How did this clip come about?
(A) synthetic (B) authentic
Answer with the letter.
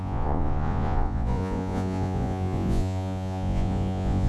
A